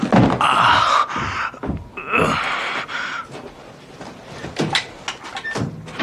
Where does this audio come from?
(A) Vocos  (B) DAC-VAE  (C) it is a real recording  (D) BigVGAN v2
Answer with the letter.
C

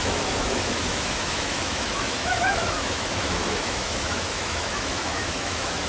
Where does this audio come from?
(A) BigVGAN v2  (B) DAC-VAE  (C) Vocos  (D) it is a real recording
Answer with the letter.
B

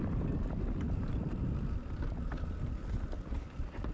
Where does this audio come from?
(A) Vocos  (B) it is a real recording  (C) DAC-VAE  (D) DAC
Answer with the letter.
B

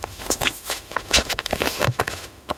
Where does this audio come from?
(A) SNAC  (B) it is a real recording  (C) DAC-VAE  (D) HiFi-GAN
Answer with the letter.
C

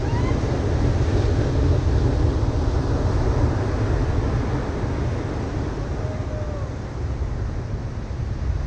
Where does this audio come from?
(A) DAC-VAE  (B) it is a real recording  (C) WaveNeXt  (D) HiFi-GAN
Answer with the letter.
B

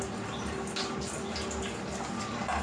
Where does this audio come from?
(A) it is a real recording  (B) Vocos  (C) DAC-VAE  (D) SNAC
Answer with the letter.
A